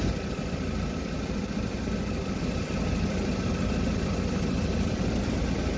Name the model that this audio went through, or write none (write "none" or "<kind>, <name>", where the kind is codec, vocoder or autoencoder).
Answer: none